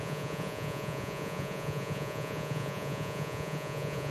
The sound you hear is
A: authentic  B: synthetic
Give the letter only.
B